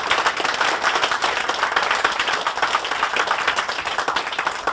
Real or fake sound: real